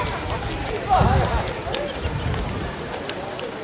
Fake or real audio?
real